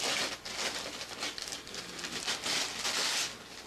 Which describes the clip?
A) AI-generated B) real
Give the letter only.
B